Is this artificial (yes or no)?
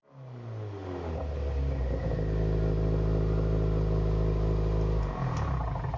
no